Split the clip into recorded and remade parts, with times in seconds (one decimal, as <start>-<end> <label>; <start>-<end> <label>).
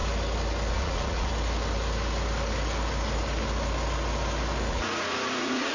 0.0-0.7 recorded; 0.7-1.3 remade; 1.3-4.7 recorded; 4.7-5.7 remade